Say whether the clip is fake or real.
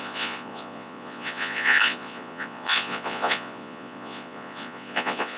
fake